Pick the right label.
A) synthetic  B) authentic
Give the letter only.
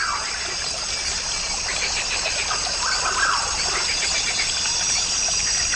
B